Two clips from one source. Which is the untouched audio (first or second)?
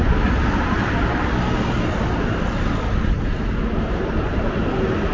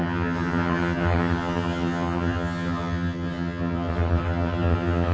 first